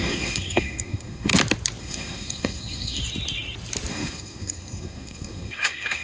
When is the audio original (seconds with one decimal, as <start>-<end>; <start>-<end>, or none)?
1.3-1.8; 3.0-3.9